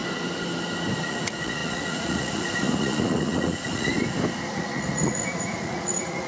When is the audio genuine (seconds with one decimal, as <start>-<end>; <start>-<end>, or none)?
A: 0.0-1.0; 3.9-4.5